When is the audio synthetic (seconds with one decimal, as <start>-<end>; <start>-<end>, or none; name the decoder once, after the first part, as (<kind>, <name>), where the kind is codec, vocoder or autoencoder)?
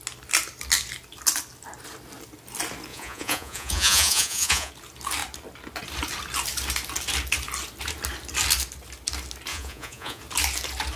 2.9-4.7 (vocoder, Vocos); 9.5-10.2